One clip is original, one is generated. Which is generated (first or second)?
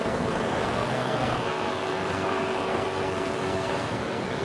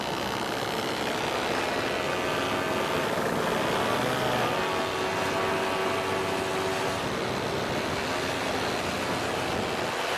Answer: first